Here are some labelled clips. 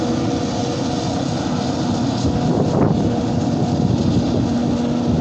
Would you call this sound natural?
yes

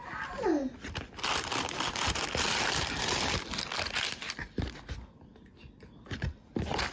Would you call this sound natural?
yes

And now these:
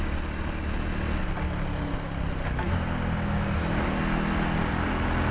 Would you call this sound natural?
yes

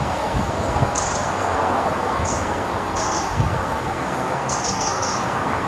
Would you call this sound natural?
no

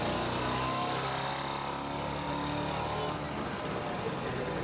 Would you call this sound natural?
yes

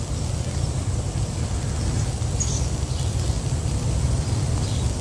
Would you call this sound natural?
yes